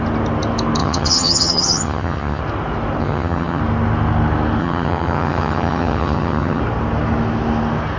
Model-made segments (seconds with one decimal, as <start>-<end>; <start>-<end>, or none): 0.8-2.4; 3.0-3.6; 4.6-6.6